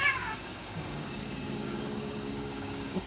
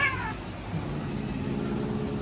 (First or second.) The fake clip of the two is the first